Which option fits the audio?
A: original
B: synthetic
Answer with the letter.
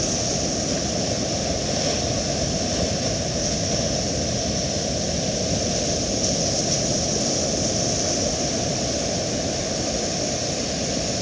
A